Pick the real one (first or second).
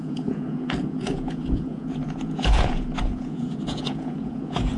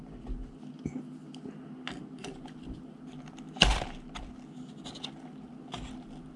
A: second